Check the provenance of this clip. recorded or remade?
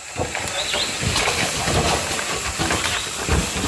recorded